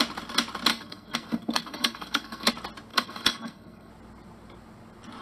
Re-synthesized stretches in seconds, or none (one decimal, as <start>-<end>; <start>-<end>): 0.7-2.5; 2.9-3.9